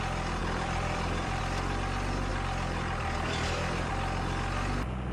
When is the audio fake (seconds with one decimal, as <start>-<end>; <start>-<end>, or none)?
0.4-1.4; 2.3-3.9